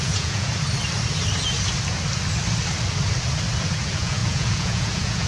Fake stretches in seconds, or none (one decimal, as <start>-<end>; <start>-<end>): 0.0-0.5; 3.7-5.3